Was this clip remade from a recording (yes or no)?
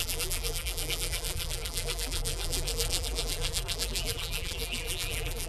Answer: yes